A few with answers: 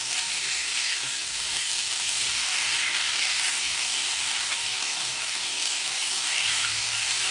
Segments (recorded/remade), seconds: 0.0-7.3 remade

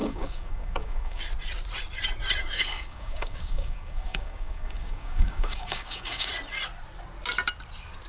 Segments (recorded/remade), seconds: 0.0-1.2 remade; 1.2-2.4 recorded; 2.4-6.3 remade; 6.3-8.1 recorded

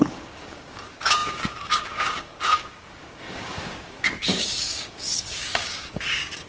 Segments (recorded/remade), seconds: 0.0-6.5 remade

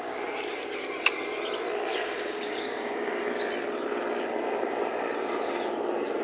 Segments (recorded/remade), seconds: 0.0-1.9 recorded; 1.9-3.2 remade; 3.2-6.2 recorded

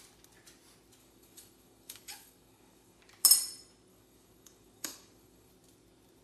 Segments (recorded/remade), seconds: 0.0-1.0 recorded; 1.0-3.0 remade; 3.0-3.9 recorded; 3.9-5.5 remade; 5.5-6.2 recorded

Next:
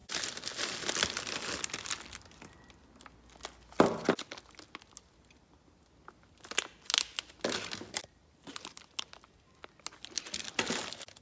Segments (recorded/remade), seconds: 0.0-11.2 recorded

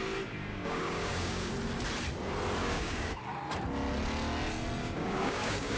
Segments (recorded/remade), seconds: 0.0-0.5 recorded; 0.5-1.5 remade; 1.5-2.6 recorded; 2.6-3.2 remade; 3.2-4.8 recorded; 4.8-5.8 remade